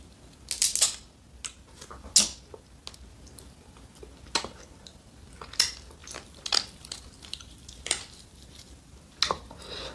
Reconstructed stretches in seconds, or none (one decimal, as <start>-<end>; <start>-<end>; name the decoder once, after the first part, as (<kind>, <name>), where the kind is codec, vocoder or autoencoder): 6.0-9.2 (vocoder, BigVGAN v2)